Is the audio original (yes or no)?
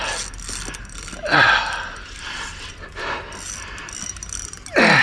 yes